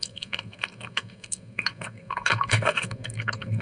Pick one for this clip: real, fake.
fake